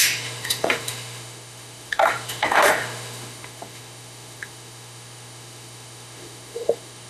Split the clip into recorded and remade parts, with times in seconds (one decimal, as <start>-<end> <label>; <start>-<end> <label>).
0.0-7.1 remade